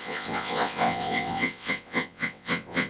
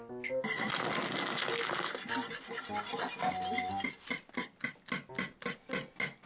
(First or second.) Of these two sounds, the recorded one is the second